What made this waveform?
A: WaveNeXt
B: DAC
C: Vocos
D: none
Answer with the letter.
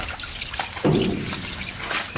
D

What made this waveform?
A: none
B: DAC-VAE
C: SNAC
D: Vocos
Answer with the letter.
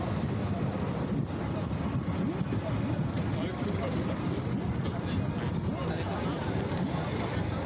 A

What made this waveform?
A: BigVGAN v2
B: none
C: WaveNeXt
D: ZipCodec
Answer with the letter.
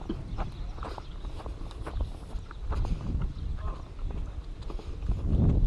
B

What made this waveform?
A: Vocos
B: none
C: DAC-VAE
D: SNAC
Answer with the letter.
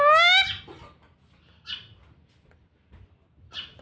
B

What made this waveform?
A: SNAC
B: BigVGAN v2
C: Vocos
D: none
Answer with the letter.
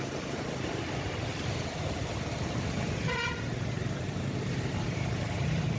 B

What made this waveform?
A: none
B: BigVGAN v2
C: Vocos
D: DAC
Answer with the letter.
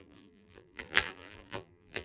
B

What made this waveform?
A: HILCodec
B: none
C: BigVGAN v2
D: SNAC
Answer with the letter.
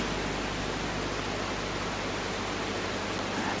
B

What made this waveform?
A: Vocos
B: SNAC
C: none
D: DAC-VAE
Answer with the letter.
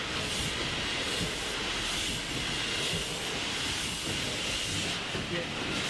C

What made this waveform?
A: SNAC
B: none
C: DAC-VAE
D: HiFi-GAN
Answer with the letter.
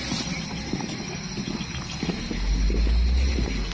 B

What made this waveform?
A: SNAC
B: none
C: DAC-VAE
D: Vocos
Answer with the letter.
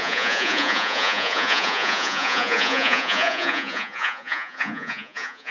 D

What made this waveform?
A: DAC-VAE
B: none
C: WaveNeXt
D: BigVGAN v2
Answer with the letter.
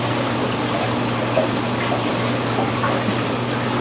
B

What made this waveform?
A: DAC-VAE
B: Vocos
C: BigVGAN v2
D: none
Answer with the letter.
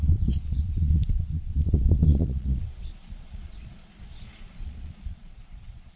B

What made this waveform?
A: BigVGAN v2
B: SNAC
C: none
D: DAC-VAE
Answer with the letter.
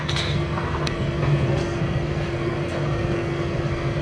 B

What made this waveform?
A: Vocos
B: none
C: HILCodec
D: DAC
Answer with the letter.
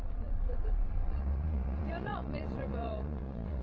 A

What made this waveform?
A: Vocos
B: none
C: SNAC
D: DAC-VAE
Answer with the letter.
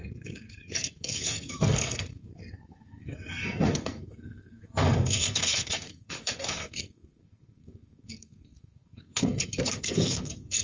C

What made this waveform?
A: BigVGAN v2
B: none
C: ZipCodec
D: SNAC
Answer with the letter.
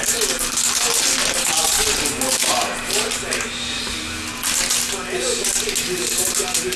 B